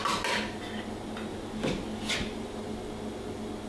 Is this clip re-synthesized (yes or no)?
no